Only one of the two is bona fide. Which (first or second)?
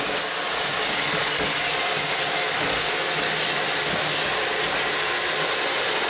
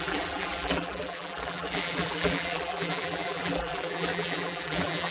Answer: first